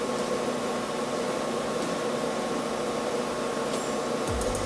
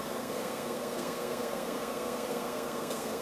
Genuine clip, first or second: first